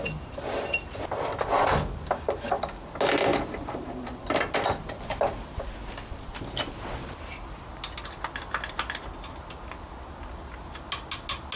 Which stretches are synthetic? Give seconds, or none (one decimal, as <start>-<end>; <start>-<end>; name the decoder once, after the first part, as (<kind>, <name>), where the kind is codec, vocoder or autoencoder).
3.3-5.8 (vocoder, BigVGAN v2)